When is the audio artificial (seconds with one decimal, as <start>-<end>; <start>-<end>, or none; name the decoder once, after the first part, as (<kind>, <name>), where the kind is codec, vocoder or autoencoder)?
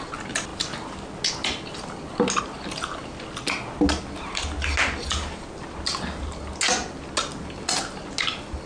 none